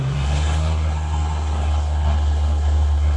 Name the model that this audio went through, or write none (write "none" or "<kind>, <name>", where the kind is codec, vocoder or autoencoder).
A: codec, SNAC